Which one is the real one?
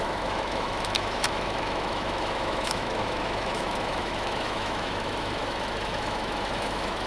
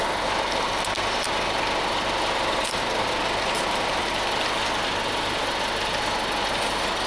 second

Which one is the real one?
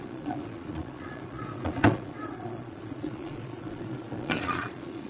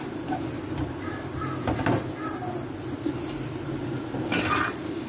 second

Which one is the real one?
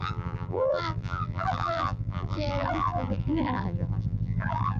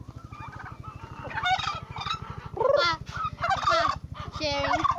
second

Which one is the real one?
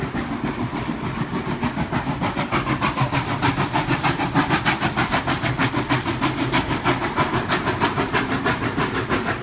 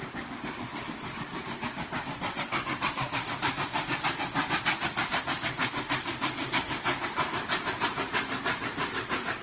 first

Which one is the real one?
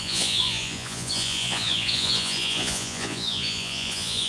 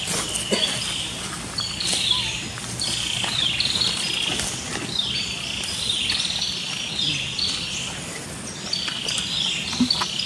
second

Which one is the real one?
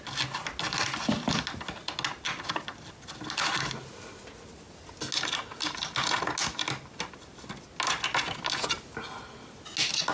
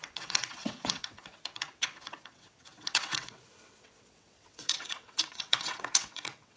first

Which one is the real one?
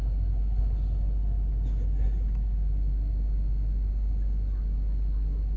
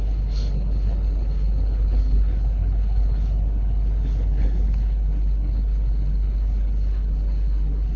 first